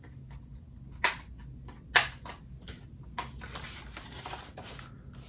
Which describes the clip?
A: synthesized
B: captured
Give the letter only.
B